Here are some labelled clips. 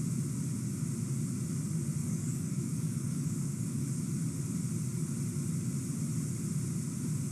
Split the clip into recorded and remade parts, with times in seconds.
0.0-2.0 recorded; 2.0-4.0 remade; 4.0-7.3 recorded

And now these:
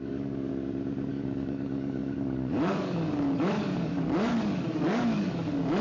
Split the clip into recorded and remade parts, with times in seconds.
0.0-0.5 remade; 0.5-1.1 recorded; 1.1-5.8 remade

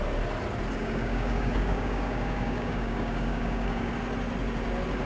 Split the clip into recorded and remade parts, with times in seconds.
0.0-0.8 recorded; 0.8-3.9 remade; 3.9-5.1 recorded